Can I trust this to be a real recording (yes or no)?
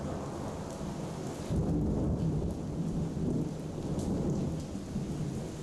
yes